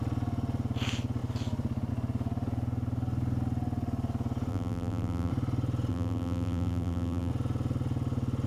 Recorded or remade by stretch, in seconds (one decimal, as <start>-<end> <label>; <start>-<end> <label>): 0.0-4.5 recorded; 4.5-5.3 remade; 5.3-5.9 recorded; 5.9-7.3 remade; 7.3-8.5 recorded